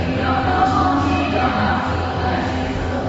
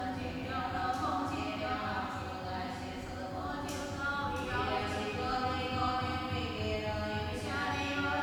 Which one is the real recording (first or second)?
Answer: second